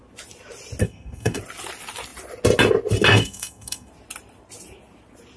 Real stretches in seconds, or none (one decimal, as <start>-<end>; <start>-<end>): 0.0-0.8; 1.4-3.1; 3.9-5.4